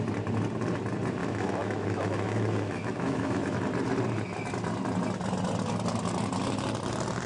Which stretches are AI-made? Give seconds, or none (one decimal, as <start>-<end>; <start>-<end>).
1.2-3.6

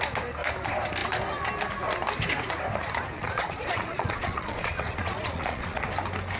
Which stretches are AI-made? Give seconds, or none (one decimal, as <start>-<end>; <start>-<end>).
3.2-5.8

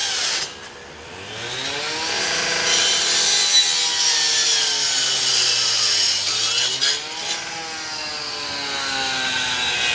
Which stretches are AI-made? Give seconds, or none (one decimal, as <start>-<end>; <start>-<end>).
none

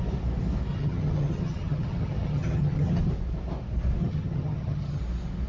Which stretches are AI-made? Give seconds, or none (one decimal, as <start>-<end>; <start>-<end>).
0.7-3.0; 4.0-5.0